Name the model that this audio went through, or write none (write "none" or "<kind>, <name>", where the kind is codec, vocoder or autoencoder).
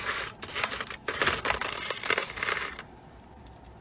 none